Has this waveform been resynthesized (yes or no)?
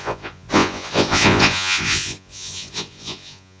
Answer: yes